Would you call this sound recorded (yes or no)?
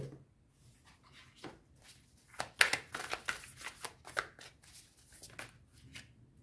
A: yes